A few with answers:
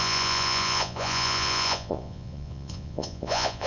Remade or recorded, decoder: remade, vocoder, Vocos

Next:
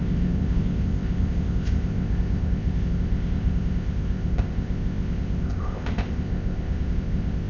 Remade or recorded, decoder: remade, codec, ZipCodec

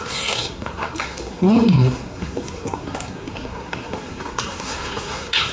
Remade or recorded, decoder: remade, codec, SNAC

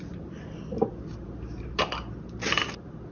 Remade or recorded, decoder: recorded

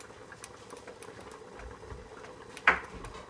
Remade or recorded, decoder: recorded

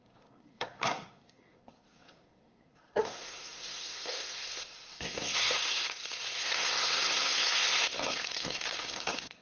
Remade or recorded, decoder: remade, codec, SNAC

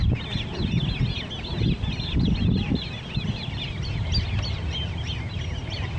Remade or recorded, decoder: recorded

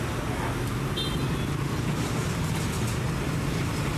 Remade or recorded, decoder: recorded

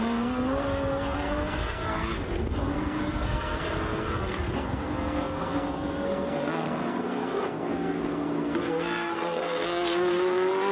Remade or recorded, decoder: remade, codec, SNAC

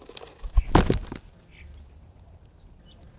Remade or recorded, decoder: recorded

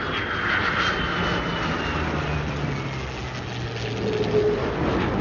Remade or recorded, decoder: recorded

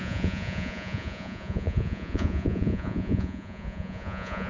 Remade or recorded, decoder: remade, vocoder, Vocos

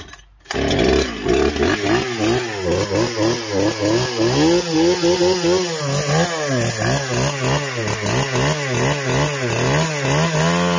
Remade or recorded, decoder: recorded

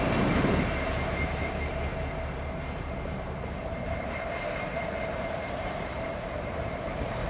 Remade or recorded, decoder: remade, vocoder, BigVGAN v2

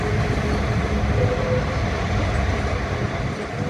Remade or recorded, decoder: recorded